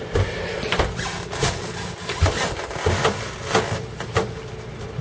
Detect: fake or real real